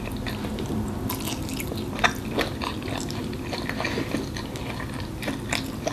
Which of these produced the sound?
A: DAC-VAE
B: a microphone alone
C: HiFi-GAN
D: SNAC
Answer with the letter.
B